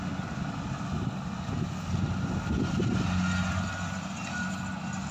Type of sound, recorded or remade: recorded